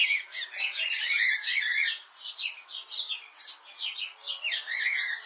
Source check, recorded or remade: recorded